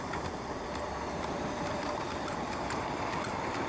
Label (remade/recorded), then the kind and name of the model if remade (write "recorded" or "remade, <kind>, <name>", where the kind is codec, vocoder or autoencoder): recorded